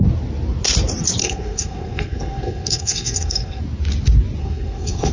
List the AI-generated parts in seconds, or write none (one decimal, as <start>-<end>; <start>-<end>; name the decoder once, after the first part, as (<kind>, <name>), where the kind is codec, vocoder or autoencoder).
1.2-3.6 (codec, SNAC); 4.4-5.1

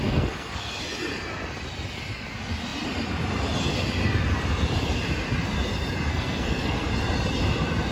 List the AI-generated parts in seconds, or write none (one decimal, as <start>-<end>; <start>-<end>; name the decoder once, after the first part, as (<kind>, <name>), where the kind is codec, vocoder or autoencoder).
0.0-0.8 (codec, SNAC); 6.1-6.9

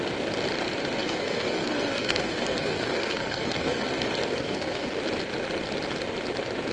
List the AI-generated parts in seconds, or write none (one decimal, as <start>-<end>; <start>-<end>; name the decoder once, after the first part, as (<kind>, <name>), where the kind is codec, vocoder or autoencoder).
1.0-3.9 (codec, SNAC); 4.3-5.0